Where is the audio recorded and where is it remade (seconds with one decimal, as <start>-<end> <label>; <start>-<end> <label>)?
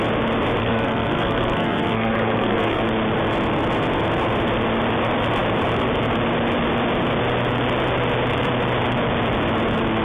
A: 0.0-0.6 recorded; 0.6-2.8 remade; 2.8-10.0 recorded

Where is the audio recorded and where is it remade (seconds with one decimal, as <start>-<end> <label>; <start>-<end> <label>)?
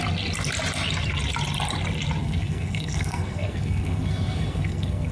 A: 0.0-2.2 recorded; 2.2-5.1 remade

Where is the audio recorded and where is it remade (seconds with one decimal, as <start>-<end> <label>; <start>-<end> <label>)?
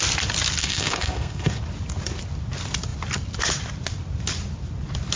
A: 0.0-0.6 recorded; 0.6-1.6 remade; 1.6-5.2 recorded